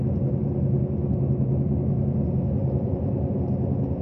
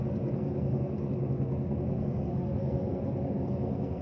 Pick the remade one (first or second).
second